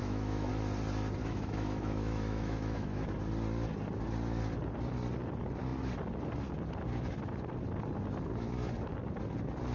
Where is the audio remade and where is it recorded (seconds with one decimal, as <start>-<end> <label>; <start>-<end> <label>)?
0.0-0.5 remade; 0.5-1.2 recorded; 1.2-3.1 remade; 3.1-9.7 recorded